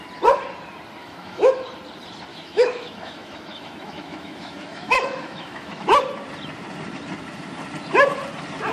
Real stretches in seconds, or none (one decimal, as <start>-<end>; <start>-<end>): 0.0-1.0; 1.5-2.3; 6.0-8.7